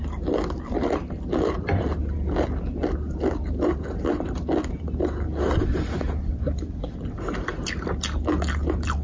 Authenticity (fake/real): real